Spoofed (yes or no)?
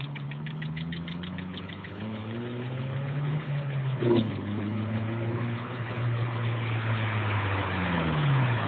yes